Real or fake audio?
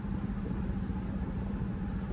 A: real